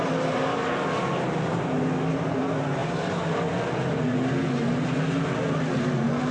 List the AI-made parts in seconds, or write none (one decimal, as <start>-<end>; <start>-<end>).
none